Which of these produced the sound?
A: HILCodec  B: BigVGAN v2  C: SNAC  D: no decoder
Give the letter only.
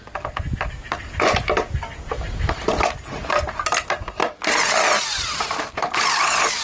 D